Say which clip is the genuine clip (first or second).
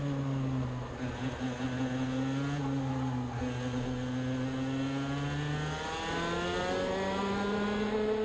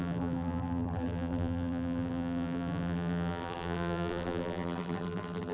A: first